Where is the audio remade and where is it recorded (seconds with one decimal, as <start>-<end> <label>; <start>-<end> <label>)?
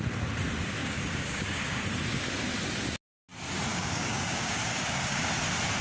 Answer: 0.0-0.8 recorded; 0.8-1.8 remade; 1.8-3.7 recorded; 3.7-5.2 remade; 5.2-5.8 recorded